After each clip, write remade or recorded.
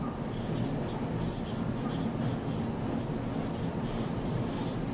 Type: recorded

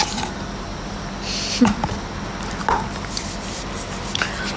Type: recorded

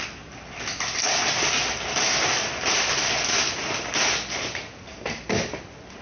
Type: recorded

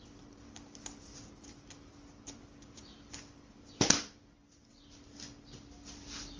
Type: remade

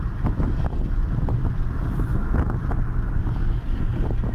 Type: recorded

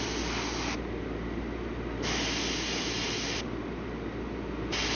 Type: recorded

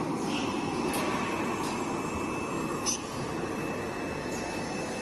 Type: recorded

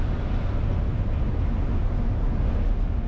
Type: recorded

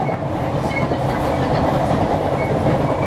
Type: recorded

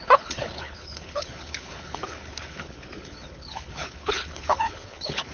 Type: remade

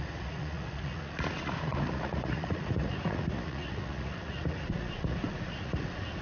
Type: remade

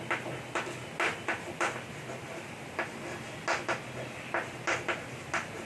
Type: recorded